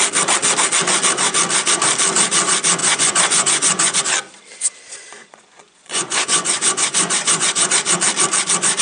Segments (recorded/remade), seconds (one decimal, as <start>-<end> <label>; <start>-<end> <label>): 0.0-2.8 recorded; 2.8-4.0 remade; 4.0-5.2 recorded; 5.2-7.7 remade; 7.7-8.8 recorded